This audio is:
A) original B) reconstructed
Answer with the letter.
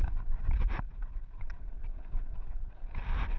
A